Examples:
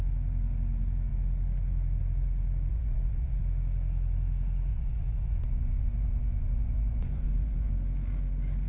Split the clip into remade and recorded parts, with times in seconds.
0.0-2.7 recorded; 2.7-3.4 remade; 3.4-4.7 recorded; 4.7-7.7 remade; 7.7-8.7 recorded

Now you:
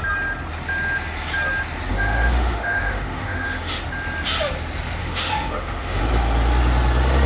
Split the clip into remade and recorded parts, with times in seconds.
0.0-1.9 recorded; 1.9-3.8 remade; 3.8-5.0 recorded; 5.0-6.0 remade; 6.0-7.3 recorded